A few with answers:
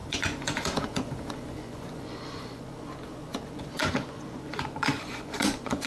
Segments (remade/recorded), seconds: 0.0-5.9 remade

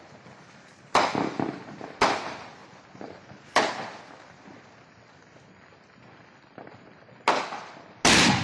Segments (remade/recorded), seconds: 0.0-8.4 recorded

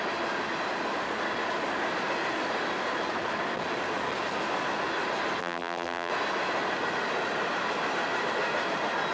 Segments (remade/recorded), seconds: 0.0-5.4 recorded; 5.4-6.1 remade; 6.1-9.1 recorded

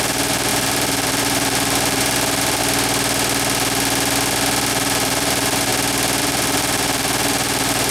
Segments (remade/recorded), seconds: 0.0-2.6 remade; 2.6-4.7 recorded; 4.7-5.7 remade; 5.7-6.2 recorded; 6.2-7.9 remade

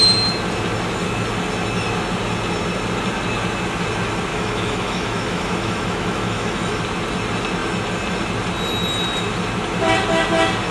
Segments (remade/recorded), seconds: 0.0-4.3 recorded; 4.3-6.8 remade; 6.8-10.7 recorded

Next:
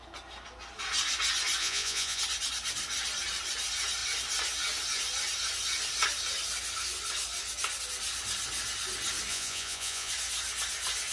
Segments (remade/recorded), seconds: 0.0-1.6 recorded; 1.6-2.2 remade; 2.2-9.3 recorded; 9.3-10.1 remade; 10.1-11.1 recorded

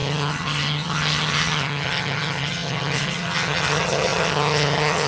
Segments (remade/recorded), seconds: 0.0-5.1 remade

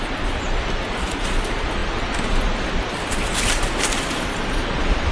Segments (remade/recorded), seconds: 0.0-5.1 recorded